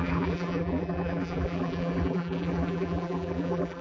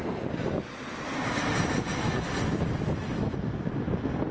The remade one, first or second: first